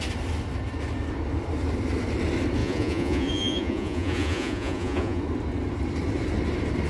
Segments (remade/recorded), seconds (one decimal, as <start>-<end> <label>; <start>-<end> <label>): 0.0-2.6 recorded; 2.6-5.2 remade; 5.2-6.9 recorded